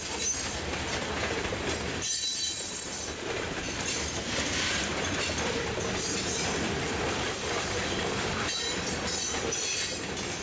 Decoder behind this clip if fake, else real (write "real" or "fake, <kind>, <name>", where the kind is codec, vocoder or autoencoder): fake, vocoder, BigVGAN v2